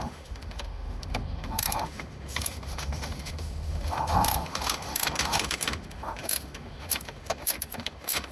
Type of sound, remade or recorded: remade